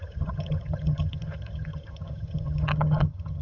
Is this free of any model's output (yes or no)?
no